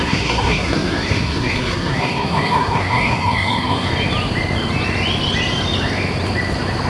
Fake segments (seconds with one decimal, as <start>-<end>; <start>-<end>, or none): 0.0-3.9